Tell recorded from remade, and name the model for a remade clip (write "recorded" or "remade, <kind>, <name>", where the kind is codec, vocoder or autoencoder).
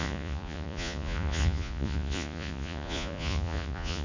remade, vocoder, Vocos